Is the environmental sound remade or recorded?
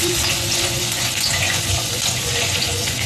remade